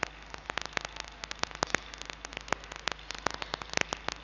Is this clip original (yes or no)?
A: yes